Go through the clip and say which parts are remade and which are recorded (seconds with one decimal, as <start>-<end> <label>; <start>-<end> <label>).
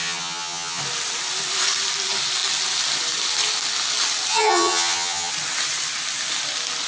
0.0-0.8 remade; 0.8-4.3 recorded; 4.3-5.3 remade; 5.3-6.9 recorded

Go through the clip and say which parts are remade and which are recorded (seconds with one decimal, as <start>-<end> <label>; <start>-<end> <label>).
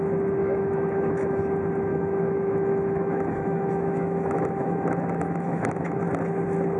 0.0-0.4 recorded; 0.4-1.4 remade; 1.4-1.9 recorded; 1.9-6.0 remade; 6.0-6.8 recorded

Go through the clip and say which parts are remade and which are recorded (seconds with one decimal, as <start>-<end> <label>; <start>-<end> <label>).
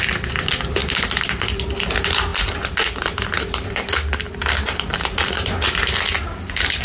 0.0-0.8 recorded; 0.8-1.6 remade; 1.6-2.3 recorded; 2.3-6.8 remade